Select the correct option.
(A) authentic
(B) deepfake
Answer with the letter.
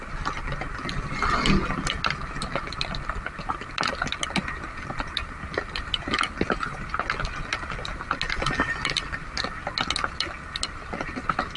A